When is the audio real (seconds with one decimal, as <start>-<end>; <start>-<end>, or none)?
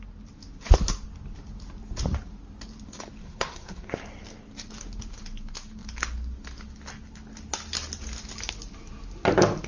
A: 0.0-3.2; 3.9-9.7